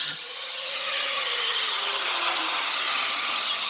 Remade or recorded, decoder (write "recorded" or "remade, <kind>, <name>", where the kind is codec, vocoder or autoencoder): remade, vocoder, HiFi-GAN